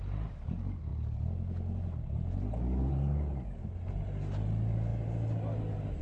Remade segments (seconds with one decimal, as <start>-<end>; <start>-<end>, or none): none